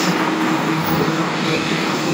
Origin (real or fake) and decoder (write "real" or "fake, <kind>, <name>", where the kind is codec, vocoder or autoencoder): fake, codec, DAC